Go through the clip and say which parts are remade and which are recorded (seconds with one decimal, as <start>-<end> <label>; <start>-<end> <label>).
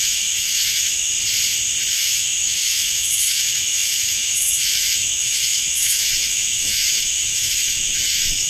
0.0-1.1 remade; 1.1-1.9 recorded; 1.9-8.5 remade